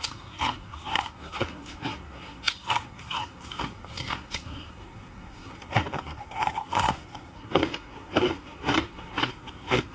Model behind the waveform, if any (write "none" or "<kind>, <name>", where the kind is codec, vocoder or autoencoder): codec, SNAC